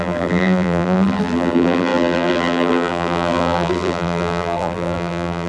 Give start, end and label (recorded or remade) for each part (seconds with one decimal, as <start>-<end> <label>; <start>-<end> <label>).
0.0-5.5 remade